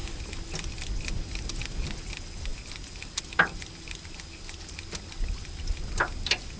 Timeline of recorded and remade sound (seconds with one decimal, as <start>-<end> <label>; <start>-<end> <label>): 0.0-6.6 recorded